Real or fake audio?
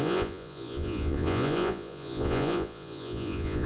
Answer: fake